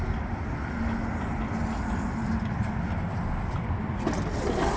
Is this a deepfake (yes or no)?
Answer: no